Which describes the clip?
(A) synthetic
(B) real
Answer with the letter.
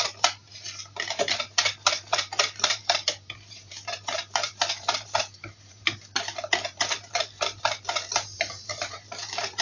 A